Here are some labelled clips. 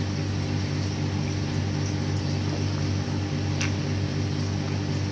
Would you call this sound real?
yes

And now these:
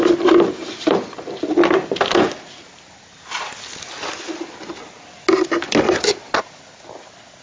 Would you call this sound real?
yes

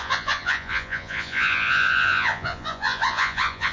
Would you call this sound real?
no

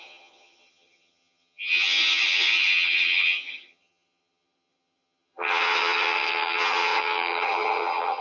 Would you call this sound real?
no